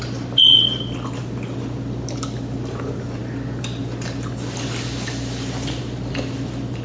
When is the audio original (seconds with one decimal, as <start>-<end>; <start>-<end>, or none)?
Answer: 0.0-6.8